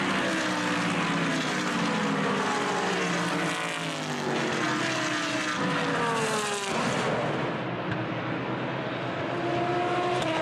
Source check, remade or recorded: recorded